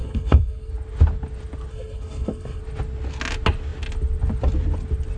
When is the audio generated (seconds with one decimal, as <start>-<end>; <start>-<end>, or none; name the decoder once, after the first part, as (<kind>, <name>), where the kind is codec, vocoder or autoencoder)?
0.0-0.7 (codec, SNAC); 1.7-2.6